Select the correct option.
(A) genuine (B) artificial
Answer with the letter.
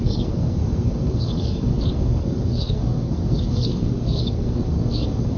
B